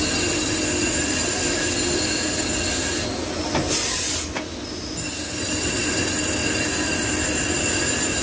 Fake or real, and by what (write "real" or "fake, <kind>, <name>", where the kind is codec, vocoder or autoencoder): real